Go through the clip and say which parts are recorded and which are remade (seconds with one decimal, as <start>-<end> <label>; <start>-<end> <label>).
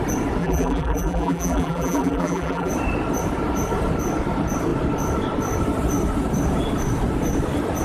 0.0-0.4 recorded; 0.4-2.7 remade; 2.7-7.8 recorded